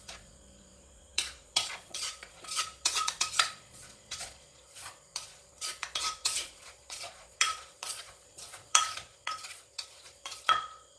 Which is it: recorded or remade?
remade